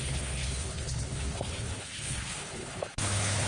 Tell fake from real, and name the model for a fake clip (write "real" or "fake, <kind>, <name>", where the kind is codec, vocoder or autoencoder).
fake, codec, HILCodec